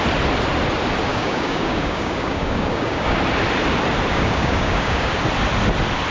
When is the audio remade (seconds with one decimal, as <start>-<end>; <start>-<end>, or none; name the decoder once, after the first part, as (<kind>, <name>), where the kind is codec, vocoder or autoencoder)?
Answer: 1.1-3.2 (codec, DAC); 4.1-5.2